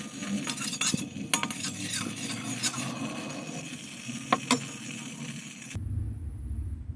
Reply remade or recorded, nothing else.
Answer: recorded